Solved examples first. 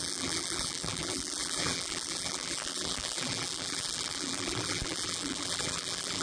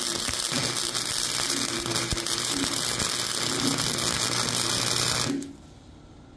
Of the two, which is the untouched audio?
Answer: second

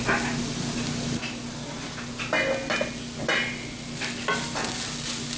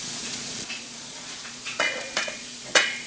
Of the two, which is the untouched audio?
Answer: first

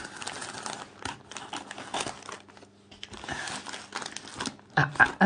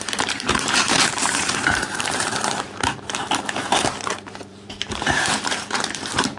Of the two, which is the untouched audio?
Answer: first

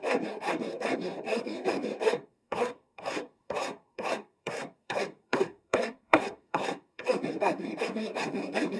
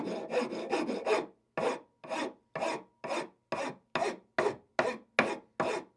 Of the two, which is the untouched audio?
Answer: second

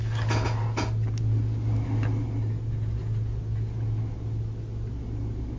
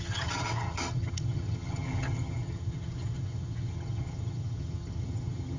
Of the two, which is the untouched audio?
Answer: first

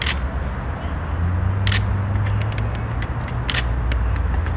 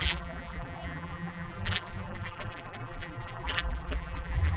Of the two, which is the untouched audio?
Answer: first